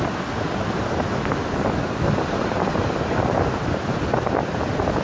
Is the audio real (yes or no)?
yes